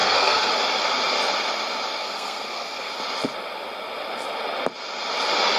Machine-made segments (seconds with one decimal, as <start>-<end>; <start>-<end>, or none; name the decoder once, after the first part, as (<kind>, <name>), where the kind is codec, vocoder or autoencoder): 0.0-0.5 (codec, SNAC); 2.0-2.9